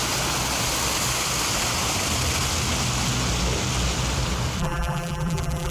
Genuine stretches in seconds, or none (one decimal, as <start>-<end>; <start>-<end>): 0.0-4.6